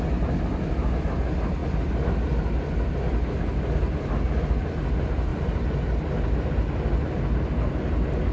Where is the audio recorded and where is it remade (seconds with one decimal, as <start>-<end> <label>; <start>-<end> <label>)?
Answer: 0.0-8.3 recorded